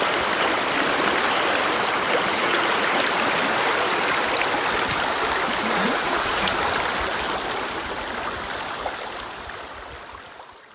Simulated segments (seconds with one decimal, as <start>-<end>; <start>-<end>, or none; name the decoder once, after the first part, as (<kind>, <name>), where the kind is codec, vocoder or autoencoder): 2.3-3.0 (vocoder, Vocos); 5.6-6.5